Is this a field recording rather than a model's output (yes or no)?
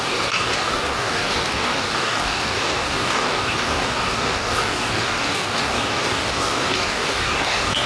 no